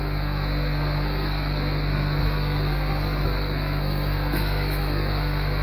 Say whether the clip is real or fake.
fake